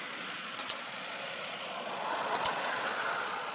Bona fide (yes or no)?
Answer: no